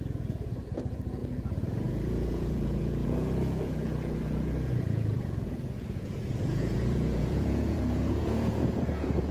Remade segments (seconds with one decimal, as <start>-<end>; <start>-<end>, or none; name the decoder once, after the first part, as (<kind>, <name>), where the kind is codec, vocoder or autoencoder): 0.0-9.3 (vocoder, Vocos)